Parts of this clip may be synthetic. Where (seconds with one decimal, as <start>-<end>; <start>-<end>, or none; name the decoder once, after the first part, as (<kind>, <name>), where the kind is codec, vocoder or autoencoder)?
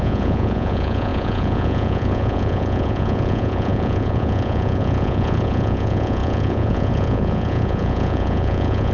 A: 0.0-8.9 (vocoder, Vocos)